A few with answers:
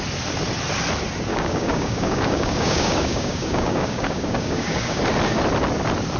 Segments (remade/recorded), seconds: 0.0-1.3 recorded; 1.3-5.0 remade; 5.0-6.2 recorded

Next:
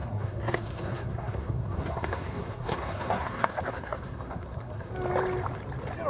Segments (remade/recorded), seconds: 0.0-4.9 remade; 4.9-6.1 recorded

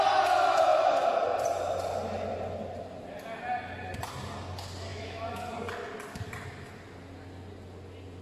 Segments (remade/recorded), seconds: 0.0-4.9 recorded; 4.9-5.5 remade; 5.5-8.2 recorded

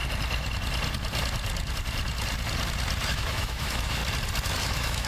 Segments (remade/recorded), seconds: 0.0-3.1 recorded; 3.1-4.0 remade; 4.0-4.6 recorded; 4.6-5.1 remade

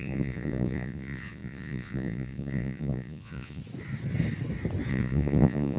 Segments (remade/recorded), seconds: 0.0-3.6 remade; 3.6-4.9 recorded; 4.9-5.8 remade

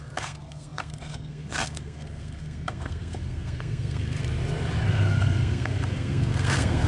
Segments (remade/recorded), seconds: 0.0-4.2 remade; 4.2-4.9 recorded; 4.9-6.9 remade

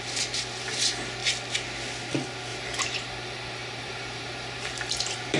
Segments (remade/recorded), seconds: 0.0-2.5 recorded; 2.5-5.4 remade

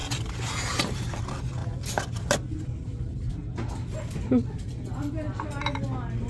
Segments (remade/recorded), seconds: 0.0-1.2 remade; 1.2-6.3 recorded